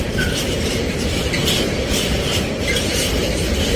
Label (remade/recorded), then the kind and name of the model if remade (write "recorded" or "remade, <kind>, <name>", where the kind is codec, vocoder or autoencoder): remade, vocoder, BigVGAN v2